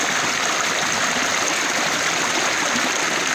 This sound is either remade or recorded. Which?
recorded